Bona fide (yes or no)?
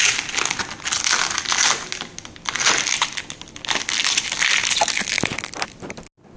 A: yes